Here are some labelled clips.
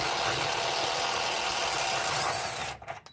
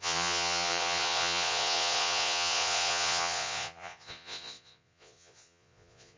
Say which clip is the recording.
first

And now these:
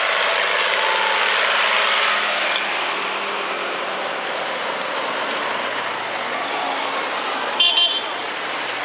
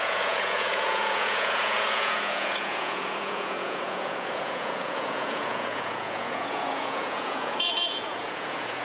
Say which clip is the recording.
first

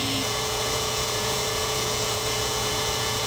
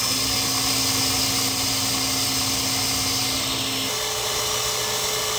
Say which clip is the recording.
second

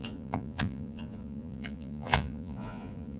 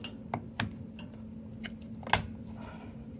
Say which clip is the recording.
second